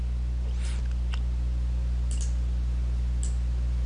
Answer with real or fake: real